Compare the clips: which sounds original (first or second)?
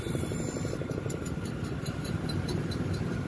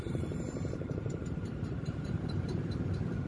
first